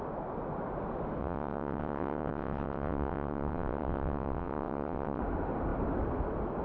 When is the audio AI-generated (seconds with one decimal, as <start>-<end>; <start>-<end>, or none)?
1.2-5.2